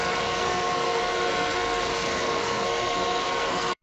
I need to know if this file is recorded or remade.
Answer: remade